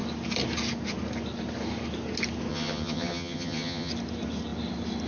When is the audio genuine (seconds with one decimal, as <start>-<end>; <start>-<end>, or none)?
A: 0.0-2.5; 3.9-5.1